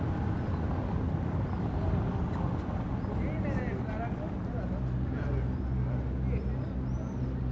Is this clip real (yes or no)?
yes